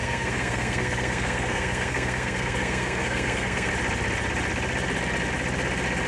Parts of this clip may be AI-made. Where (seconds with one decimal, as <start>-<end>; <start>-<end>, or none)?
0.0-3.7